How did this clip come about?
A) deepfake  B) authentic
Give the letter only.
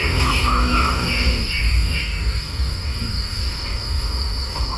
A